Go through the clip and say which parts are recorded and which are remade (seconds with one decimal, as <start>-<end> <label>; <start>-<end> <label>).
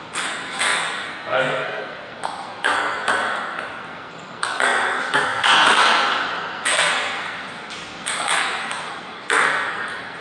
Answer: 0.0-10.2 remade